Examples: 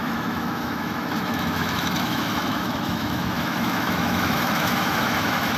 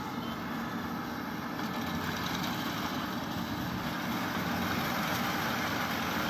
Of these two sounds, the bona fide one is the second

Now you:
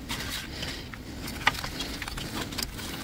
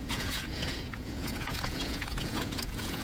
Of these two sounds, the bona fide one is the first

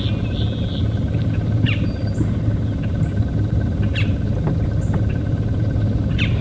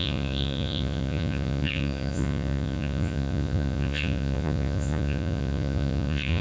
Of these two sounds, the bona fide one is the first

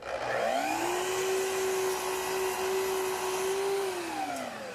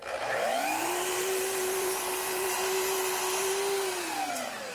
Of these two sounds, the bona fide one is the first